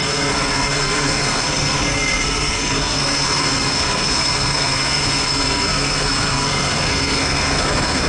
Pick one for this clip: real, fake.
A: fake